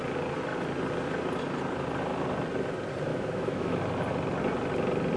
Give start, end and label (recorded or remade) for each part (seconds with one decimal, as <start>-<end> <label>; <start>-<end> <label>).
0.0-3.1 recorded; 3.1-3.8 remade; 3.8-5.2 recorded